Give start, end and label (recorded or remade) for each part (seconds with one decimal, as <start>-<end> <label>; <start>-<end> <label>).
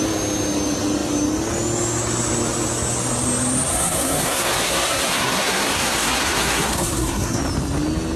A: 0.0-3.7 recorded; 3.7-7.4 remade; 7.4-8.2 recorded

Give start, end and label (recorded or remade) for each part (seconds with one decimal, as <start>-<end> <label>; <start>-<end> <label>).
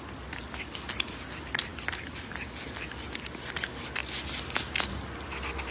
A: 0.0-5.7 recorded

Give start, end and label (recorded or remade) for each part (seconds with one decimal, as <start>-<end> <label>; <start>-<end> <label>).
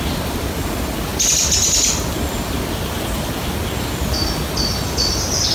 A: 0.0-5.5 recorded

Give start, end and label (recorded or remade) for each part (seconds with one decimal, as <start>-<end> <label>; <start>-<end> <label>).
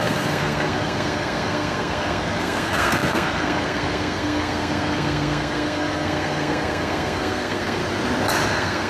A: 0.0-7.8 remade; 7.8-8.5 recorded; 8.5-8.9 remade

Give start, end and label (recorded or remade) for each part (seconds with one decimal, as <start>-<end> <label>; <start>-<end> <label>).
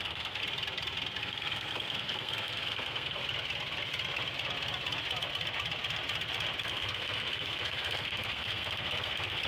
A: 0.0-0.4 remade; 0.4-1.2 recorded; 1.2-3.2 remade; 3.2-6.6 recorded; 6.6-9.5 remade